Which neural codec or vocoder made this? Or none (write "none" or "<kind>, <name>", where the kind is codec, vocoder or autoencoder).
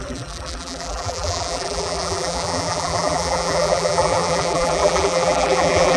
vocoder, BigVGAN v2